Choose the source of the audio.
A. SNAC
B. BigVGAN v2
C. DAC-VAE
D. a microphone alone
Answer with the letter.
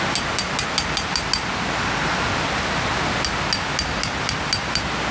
D